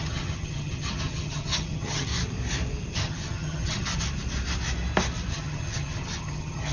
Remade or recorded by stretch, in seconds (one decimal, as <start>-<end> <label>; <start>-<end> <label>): 0.0-2.1 remade; 2.1-2.9 recorded; 2.9-3.9 remade; 3.9-5.3 recorded; 5.3-6.7 remade